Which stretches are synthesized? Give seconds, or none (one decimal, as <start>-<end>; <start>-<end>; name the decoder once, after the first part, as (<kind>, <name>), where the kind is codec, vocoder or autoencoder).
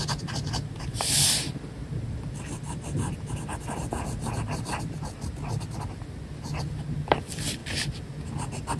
none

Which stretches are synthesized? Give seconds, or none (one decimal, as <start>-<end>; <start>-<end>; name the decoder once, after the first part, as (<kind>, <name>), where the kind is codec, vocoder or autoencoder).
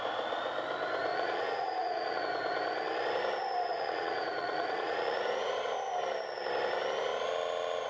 1.1-2.2 (vocoder, Vocos); 3.7-5.7